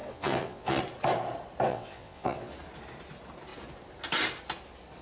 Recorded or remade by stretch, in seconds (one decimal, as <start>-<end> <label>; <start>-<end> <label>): 0.0-0.8 remade; 0.8-1.7 recorded; 1.7-2.5 remade; 2.5-5.0 recorded